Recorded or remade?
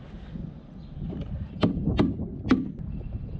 recorded